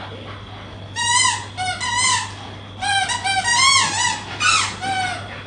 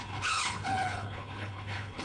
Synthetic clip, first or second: second